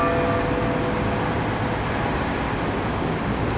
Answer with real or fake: real